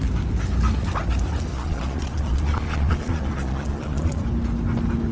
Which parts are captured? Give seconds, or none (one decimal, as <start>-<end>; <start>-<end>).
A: 0.0-1.5; 4.2-5.1